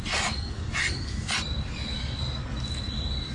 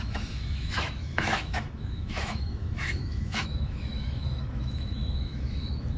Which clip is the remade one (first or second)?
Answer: second